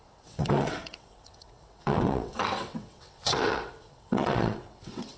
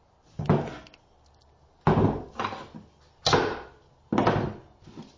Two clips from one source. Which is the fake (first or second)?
first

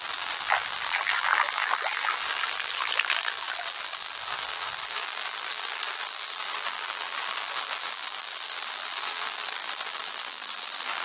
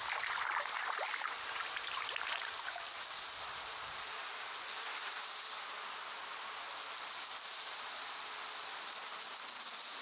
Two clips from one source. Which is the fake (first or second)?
first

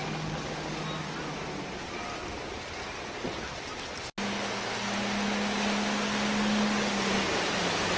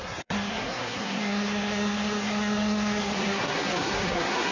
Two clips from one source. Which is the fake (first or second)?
second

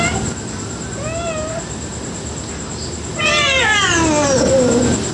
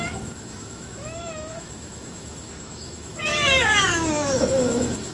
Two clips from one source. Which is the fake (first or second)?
second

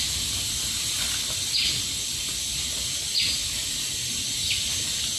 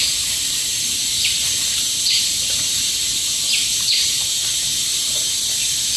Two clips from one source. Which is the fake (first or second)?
second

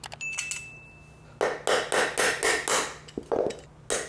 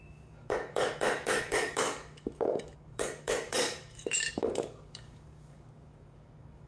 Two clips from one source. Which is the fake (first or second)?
second